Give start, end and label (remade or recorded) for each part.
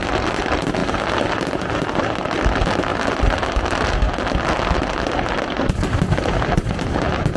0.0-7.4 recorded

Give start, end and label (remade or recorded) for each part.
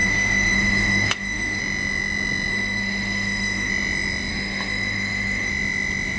0.0-1.6 remade; 1.6-2.5 recorded; 2.5-3.7 remade; 3.7-4.3 recorded; 4.3-5.5 remade; 5.5-6.2 recorded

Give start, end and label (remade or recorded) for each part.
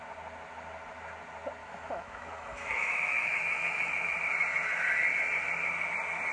0.0-1.6 recorded; 1.6-4.1 remade; 4.1-6.3 recorded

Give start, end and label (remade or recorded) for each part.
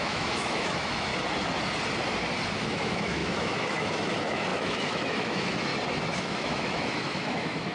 0.0-1.1 remade; 1.1-2.7 recorded; 2.7-5.7 remade; 5.7-6.2 recorded; 6.2-7.7 remade